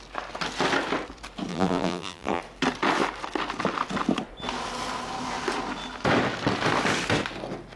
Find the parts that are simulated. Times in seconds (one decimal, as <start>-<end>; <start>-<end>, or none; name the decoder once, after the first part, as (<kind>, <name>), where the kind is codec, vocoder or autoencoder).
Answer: 1.5-2.4 (vocoder, BigVGAN v2)